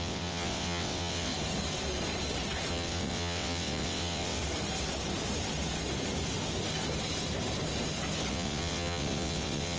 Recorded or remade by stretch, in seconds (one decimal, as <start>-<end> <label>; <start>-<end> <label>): 0.0-1.3 remade; 1.3-2.7 recorded; 2.7-4.4 remade; 4.4-8.3 recorded; 8.3-9.8 remade